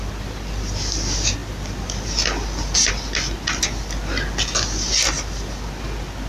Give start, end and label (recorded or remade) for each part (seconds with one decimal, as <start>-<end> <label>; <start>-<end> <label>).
0.0-6.3 recorded

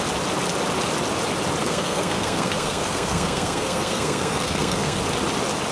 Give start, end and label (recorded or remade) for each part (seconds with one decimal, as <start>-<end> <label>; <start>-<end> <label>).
0.0-1.6 recorded; 1.6-5.0 remade; 5.0-5.7 recorded

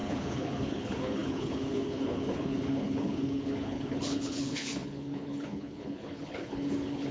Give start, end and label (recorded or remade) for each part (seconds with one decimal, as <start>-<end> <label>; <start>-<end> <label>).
0.0-7.1 remade

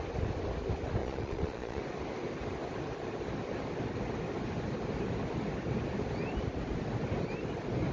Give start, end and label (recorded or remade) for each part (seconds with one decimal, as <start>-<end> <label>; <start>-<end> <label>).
0.0-1.0 recorded; 1.0-1.8 remade; 1.8-7.9 recorded